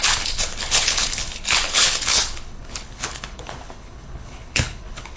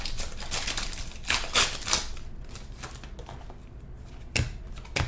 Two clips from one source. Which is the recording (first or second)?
second